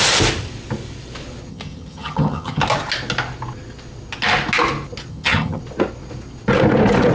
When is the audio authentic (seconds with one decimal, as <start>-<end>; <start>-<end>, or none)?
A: 0.0-1.5; 2.6-5.1; 5.6-7.1